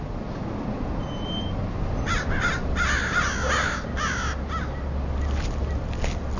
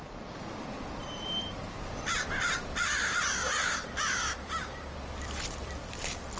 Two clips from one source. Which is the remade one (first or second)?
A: second